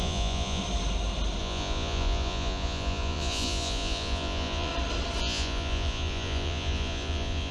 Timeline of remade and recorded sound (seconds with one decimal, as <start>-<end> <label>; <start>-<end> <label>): 0.0-0.6 remade; 0.6-1.4 recorded; 1.4-4.7 remade; 4.7-5.2 recorded; 5.2-7.5 remade